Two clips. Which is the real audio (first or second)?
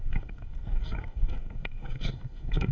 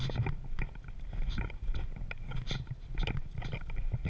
second